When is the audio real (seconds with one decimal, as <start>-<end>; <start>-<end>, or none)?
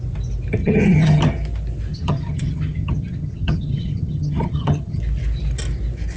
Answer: 0.0-0.6; 1.2-1.9; 5.0-6.2